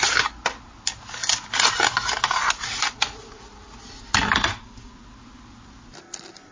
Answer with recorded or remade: recorded